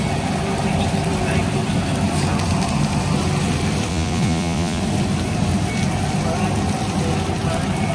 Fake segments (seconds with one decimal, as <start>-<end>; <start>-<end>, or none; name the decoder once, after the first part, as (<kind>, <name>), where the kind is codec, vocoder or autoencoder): 3.9-4.8 (vocoder, Vocos)

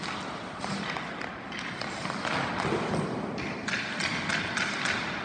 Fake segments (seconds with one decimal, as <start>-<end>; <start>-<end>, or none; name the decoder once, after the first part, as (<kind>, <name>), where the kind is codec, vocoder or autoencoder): none